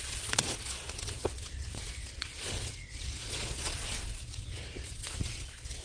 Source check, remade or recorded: remade